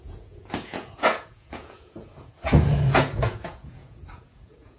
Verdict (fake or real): fake